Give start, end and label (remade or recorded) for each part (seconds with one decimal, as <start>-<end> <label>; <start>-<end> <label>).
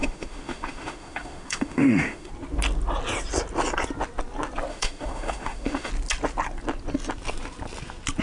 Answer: 0.0-2.3 remade; 2.3-4.7 recorded; 4.7-5.9 remade; 5.9-8.2 recorded